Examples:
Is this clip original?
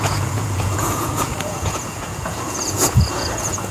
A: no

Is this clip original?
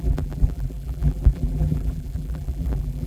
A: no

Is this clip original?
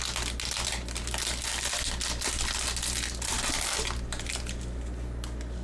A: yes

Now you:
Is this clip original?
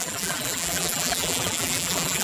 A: no